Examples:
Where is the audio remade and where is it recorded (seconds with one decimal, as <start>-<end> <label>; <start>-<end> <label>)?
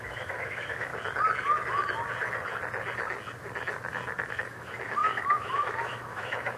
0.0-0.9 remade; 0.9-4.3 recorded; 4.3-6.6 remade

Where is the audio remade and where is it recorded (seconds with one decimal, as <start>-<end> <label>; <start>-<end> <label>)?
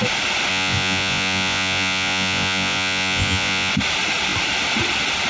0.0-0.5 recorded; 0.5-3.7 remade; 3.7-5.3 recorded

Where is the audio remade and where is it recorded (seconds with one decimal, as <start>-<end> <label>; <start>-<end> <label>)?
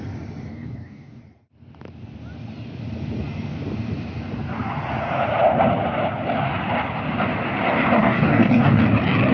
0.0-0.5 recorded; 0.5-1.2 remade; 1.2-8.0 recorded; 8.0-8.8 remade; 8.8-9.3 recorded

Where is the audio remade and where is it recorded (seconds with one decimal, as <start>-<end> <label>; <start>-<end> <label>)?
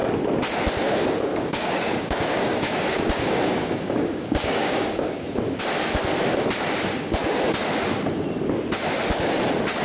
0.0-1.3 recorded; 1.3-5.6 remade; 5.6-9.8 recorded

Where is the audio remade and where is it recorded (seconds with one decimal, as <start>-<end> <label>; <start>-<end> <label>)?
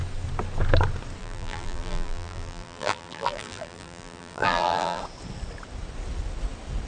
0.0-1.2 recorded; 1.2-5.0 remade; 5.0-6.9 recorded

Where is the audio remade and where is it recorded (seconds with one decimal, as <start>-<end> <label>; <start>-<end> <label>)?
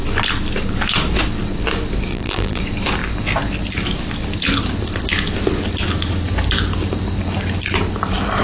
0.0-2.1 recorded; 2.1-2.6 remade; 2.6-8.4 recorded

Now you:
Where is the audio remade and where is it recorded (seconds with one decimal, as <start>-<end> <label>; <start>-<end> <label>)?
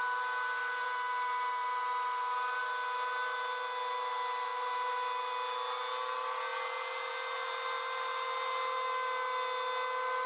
0.0-10.3 recorded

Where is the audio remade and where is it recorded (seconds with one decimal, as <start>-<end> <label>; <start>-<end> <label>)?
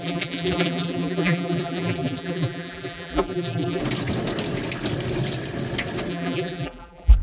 0.0-3.8 remade; 3.8-6.1 recorded; 6.1-7.2 remade